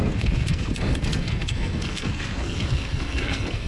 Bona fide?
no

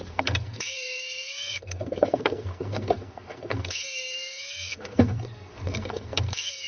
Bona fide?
no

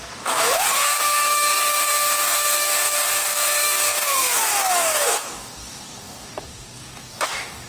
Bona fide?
no